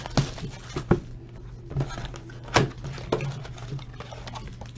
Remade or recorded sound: recorded